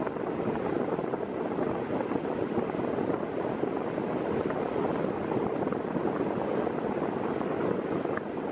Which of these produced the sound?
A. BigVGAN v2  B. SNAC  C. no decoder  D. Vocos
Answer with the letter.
C